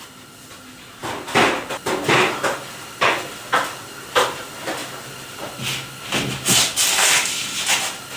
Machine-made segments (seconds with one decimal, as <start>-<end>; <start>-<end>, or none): none